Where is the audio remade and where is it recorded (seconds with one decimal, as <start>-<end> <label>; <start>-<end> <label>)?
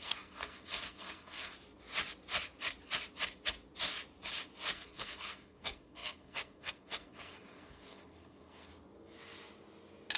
0.0-1.5 remade; 1.5-4.7 recorded; 4.7-8.7 remade; 8.7-10.2 recorded